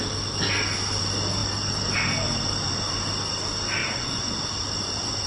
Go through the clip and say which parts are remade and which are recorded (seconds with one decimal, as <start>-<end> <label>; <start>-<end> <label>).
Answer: 0.0-3.8 recorded; 3.8-4.3 remade; 4.3-5.3 recorded